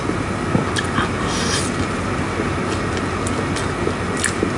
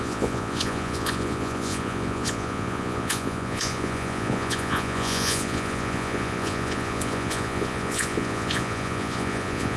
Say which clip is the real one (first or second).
first